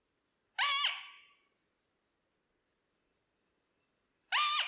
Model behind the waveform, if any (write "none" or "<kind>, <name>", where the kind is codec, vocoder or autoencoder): none